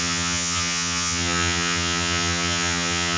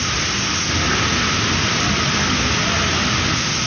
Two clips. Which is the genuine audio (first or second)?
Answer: second